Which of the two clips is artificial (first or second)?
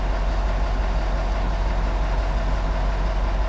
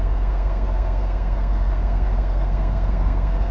second